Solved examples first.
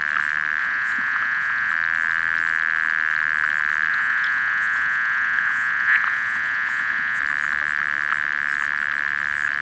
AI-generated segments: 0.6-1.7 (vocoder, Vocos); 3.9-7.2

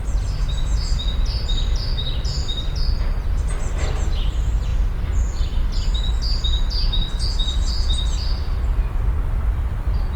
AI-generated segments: none